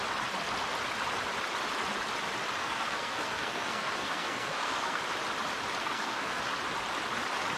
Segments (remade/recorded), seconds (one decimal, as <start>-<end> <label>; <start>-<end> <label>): 0.0-2.6 recorded; 2.6-5.0 remade; 5.0-5.8 recorded; 5.8-6.4 remade; 6.4-7.6 recorded